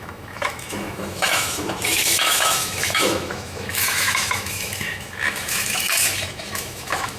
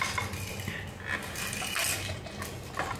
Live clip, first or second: second